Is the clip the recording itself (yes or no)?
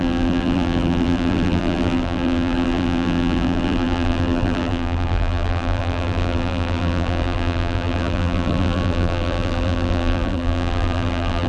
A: no